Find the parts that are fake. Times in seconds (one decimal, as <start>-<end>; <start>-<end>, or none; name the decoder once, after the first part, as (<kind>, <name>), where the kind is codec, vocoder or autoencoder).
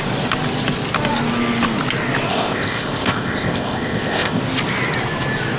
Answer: 2.3-4.4 (codec, ZipCodec)